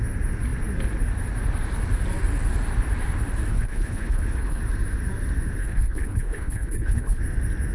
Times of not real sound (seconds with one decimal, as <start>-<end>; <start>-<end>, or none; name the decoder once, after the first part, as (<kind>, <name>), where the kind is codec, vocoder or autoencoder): 3.5-4.6 (codec, HILCodec); 5.6-7.2